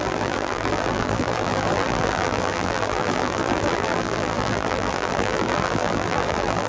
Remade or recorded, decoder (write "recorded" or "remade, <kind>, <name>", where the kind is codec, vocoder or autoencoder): remade, vocoder, BigVGAN v2